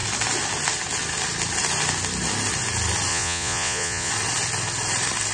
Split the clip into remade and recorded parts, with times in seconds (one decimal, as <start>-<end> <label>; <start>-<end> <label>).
0.0-3.1 recorded; 3.1-4.1 remade; 4.1-5.3 recorded